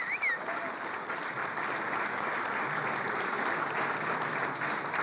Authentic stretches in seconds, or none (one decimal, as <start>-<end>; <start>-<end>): 0.0-5.0